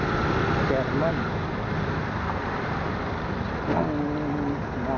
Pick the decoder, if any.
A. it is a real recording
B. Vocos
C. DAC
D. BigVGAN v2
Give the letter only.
A